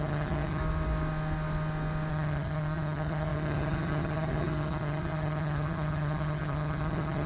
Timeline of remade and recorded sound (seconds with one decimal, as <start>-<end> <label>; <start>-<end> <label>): 0.0-0.6 remade; 0.6-2.1 recorded; 2.1-7.3 remade